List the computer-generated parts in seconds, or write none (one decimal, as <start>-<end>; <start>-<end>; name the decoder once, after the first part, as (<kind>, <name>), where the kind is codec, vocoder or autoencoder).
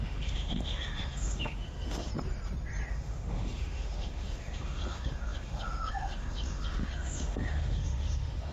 0.0-2.1 (autoencoder, DAC-VAE); 2.9-8.5